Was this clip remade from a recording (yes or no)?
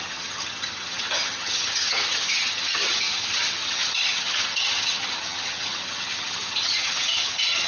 yes